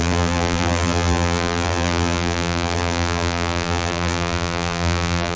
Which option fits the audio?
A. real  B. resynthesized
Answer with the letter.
B